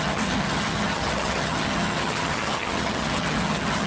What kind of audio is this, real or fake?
fake